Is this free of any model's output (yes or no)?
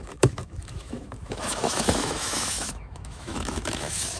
no